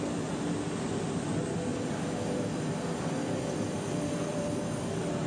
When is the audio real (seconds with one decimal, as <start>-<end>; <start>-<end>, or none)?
0.0-1.7